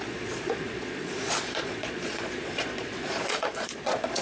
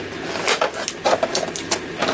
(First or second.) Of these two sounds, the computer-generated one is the first